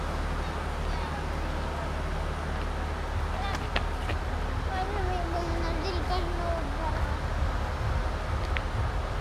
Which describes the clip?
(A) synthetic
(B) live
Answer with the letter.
B